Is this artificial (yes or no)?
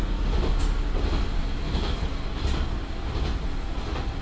no